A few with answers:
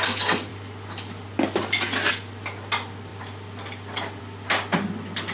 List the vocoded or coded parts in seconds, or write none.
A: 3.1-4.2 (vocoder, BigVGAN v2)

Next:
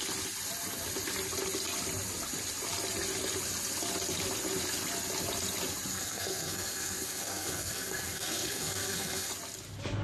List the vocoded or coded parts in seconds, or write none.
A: 5.9-9.3 (codec, SNAC)

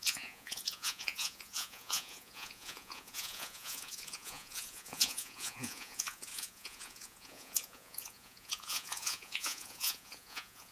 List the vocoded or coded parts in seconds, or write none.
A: 0.0-10.7 (vocoder, Vocos)

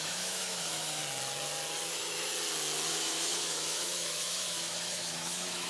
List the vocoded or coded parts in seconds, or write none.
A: 0.0-1.0 (autoencoder, DAC-VAE); 1.9-2.3; 2.9-5.7

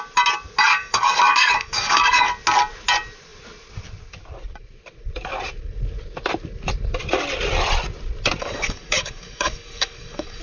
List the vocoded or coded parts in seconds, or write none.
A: 0.7-2.3 (codec, DAC); 8.4-10.4

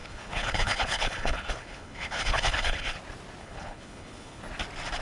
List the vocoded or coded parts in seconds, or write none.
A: 0.0-3.0 (codec, HILCodec); 3.4-4.4

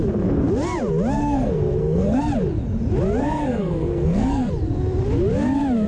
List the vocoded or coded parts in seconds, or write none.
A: 1.2-2.2 (codec, SNAC); 3.2-4.5

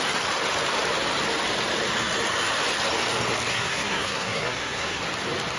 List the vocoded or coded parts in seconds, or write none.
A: 3.5-5.0 (codec, SNAC)